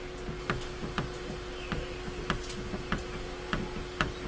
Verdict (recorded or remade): recorded